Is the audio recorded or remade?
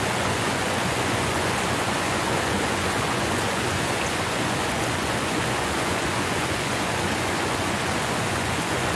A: remade